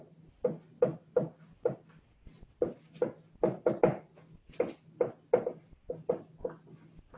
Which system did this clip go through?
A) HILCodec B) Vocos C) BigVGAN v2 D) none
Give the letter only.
D